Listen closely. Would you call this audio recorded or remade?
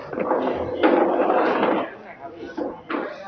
recorded